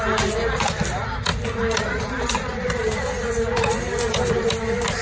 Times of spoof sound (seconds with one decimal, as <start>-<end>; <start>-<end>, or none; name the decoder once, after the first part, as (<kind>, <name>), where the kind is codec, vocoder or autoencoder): none